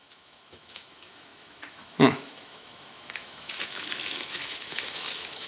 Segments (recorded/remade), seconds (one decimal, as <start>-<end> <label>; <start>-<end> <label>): 0.0-5.5 remade